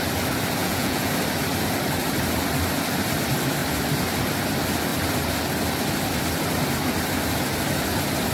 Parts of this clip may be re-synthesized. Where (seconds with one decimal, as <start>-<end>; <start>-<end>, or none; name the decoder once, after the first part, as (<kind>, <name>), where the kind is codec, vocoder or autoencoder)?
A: 0.6-1.1 (vocoder, Vocos)